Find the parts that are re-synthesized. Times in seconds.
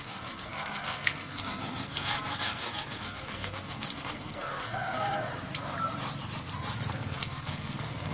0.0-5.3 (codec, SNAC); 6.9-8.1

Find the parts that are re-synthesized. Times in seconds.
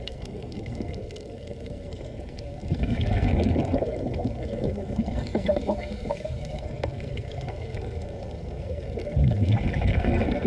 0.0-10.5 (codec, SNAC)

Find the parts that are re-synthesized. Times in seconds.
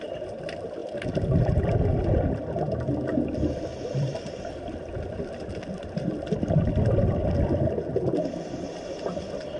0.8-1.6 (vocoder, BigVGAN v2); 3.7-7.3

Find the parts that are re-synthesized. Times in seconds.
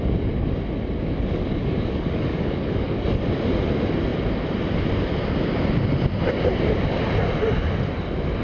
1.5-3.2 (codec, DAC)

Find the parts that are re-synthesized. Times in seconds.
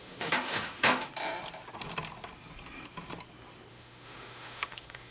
0.0-1.1 (autoencoder, DAC-VAE); 3.7-5.1